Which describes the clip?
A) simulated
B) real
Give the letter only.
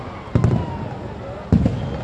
B